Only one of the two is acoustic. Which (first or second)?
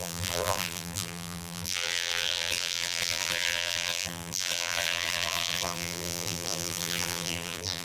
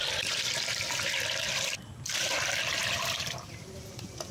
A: second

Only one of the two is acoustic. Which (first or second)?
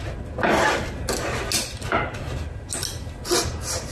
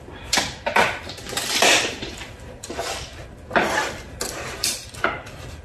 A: first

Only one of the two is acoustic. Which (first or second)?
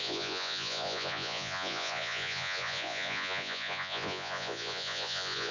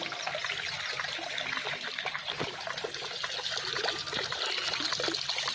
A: second